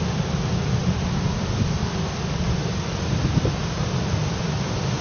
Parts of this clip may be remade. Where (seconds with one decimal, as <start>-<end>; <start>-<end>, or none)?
none